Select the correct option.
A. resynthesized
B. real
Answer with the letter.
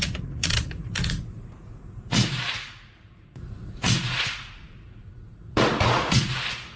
A